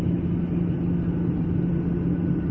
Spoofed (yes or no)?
no